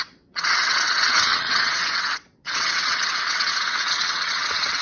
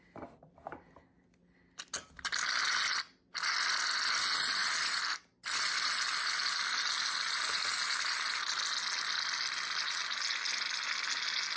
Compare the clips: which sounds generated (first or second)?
first